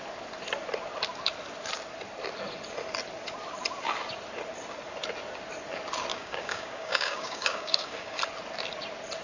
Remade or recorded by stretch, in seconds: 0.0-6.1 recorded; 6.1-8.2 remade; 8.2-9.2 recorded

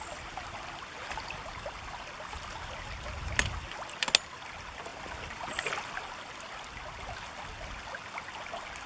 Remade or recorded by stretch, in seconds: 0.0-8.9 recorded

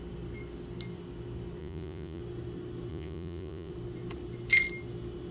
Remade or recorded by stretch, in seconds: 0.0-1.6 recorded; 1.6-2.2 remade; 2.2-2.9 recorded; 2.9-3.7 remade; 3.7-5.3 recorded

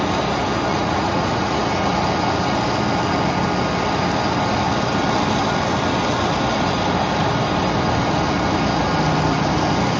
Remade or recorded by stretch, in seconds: 0.0-0.7 recorded; 0.7-1.6 remade; 1.6-10.0 recorded

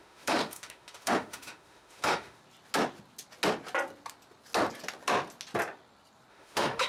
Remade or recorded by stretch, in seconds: 0.0-2.4 remade; 2.4-6.3 recorded; 6.3-6.9 remade